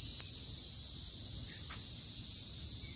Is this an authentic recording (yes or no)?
yes